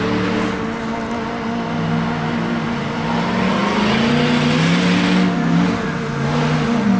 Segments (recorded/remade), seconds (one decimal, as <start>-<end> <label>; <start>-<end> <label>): 0.0-7.0 recorded